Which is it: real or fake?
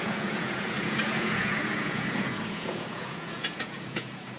fake